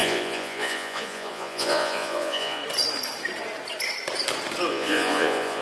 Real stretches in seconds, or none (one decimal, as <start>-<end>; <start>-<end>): 2.6-4.7